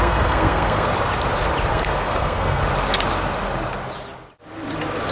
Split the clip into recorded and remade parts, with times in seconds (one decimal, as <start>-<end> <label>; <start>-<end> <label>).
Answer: 0.0-0.9 remade; 0.9-1.7 recorded; 1.7-2.6 remade; 2.6-5.1 recorded